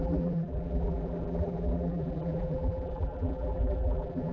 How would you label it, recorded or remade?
remade